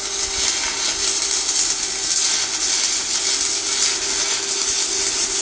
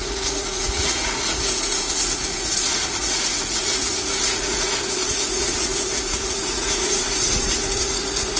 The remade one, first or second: second